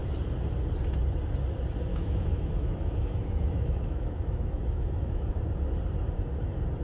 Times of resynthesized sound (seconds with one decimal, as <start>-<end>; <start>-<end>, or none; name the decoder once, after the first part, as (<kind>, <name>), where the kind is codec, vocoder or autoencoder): 1.9-5.3 (autoencoder, DAC-VAE)